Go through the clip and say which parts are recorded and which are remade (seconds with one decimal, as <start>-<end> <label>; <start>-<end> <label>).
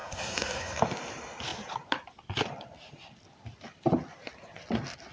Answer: 0.0-0.8 remade; 0.8-5.1 recorded